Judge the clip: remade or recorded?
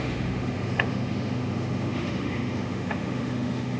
remade